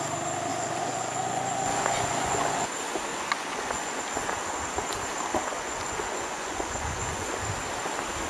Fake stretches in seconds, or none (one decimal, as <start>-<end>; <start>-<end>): 0.5-2.7; 3.1-4.0; 5.5-7.3